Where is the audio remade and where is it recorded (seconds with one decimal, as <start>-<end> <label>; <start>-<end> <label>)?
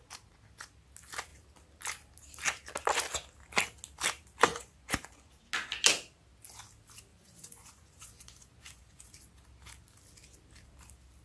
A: 0.0-4.5 recorded; 4.5-5.3 remade; 5.3-7.1 recorded; 7.1-9.2 remade; 9.2-11.2 recorded